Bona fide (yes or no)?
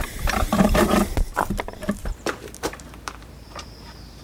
no